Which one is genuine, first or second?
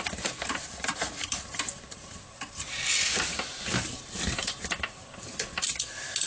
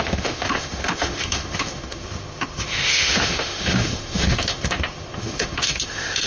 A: first